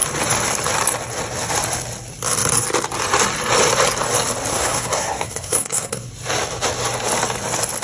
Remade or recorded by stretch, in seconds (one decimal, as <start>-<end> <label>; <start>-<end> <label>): 0.0-4.5 recorded; 4.5-6.1 remade; 6.1-7.8 recorded